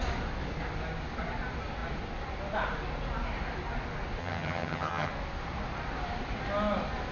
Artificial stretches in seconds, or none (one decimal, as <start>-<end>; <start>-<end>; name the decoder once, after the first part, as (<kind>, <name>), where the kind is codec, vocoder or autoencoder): 4.2-5.1 (vocoder, HiFi-GAN)

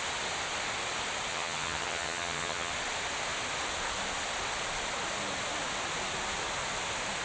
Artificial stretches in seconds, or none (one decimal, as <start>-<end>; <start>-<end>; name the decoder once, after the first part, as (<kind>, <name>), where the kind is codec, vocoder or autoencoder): 1.3-2.7 (vocoder, HiFi-GAN)

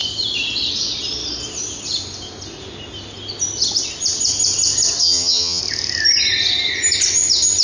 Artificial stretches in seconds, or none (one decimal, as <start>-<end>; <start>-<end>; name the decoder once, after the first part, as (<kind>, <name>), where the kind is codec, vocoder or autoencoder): 5.0-5.6 (vocoder, HiFi-GAN)

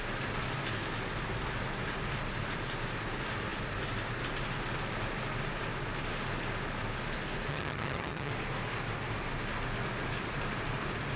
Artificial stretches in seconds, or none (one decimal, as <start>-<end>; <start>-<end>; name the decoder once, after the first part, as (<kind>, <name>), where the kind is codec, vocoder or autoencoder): 7.5-8.3 (vocoder, HiFi-GAN)

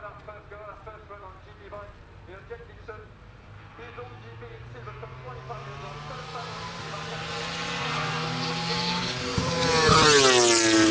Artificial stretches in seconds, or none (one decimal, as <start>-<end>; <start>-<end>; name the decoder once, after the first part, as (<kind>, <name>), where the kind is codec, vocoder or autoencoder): none

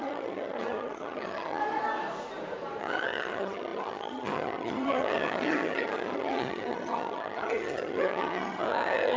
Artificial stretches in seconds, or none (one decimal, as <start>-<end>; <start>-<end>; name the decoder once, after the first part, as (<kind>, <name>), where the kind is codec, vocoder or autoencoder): 0.0-1.6 (vocoder, HiFi-GAN); 2.8-9.2

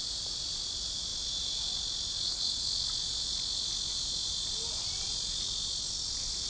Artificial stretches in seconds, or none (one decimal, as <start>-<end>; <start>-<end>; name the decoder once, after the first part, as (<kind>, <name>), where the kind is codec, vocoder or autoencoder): none

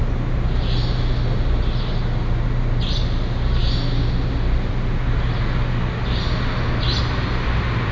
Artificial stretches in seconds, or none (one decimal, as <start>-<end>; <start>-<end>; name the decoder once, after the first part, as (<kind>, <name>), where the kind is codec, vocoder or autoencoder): none